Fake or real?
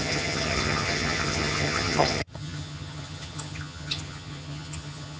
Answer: fake